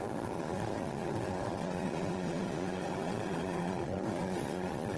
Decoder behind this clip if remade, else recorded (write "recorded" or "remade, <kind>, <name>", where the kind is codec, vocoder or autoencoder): remade, vocoder, Vocos